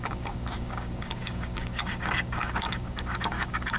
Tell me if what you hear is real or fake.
fake